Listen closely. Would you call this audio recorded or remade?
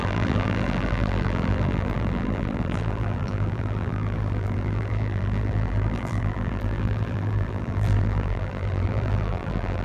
remade